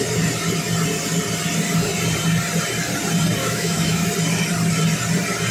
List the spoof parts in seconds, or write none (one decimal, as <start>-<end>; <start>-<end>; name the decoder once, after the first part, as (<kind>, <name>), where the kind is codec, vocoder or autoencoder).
3.4-4.1 (autoencoder, DAC-VAE)